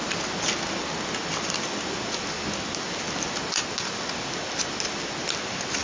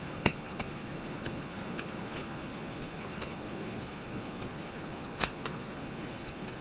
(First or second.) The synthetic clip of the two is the second